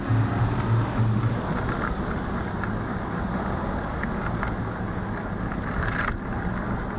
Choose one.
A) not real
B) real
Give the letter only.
B